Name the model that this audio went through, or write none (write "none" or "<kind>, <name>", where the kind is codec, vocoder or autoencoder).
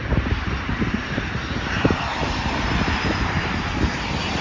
vocoder, BigVGAN v2